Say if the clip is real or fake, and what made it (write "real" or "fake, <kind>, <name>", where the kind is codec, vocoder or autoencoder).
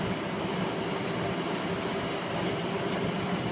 real